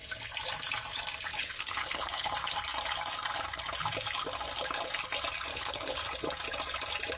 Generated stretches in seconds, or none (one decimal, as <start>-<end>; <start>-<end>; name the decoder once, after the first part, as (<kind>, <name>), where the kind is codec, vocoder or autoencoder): 1.3-2.3 (codec, HILCodec); 5.5-6.0